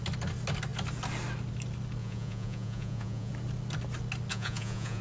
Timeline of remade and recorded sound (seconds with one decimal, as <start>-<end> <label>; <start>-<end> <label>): 0.0-2.0 recorded; 2.0-3.3 remade; 3.3-4.3 recorded; 4.3-5.0 remade

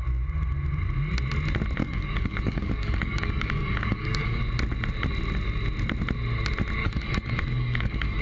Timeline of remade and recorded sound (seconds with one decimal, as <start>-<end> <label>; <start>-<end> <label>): 0.0-1.8 recorded; 1.8-4.4 remade; 4.4-6.8 recorded; 6.8-8.2 remade